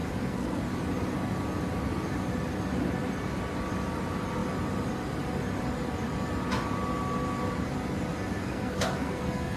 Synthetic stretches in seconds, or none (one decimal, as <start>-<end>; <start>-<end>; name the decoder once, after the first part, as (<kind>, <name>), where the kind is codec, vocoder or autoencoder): 0.0-0.6 (codec, SNAC); 8.4-9.6